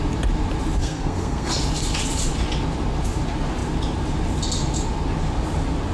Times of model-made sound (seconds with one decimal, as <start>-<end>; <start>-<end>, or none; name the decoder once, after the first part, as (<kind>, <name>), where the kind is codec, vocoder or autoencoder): 0.8-1.5 (codec, SNAC)